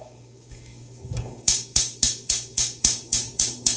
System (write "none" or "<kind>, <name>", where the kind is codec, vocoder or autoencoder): codec, DAC